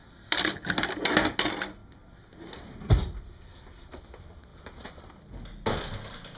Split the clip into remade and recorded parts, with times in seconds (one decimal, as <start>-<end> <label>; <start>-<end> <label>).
0.0-1.8 recorded; 1.8-4.1 remade; 4.1-4.5 recorded; 4.5-5.2 remade; 5.2-6.4 recorded